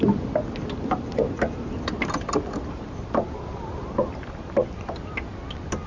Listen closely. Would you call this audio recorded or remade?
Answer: recorded